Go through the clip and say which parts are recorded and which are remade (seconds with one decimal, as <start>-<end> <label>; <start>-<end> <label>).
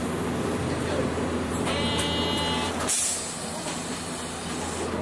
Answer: 0.0-0.9 recorded; 0.9-3.9 remade; 3.9-5.0 recorded